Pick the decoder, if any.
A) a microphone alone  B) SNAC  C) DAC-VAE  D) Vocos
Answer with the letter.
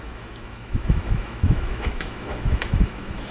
C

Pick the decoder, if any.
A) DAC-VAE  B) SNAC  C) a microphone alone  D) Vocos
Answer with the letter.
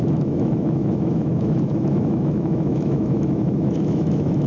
A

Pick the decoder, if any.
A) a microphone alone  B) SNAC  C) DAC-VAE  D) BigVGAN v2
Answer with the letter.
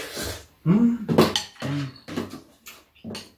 A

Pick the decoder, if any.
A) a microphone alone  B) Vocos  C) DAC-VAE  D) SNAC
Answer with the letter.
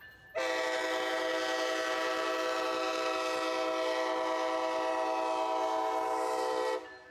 A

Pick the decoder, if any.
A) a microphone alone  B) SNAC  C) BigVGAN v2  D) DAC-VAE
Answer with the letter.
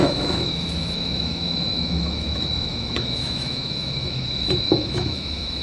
D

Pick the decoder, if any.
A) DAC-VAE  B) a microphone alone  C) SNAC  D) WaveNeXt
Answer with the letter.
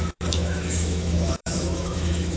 A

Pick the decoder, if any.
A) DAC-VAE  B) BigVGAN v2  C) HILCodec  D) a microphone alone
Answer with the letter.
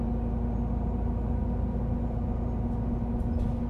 D